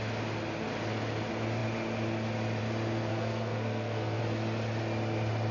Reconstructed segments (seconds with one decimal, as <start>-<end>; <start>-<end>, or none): 3.1-4.2